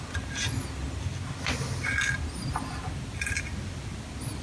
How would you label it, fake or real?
real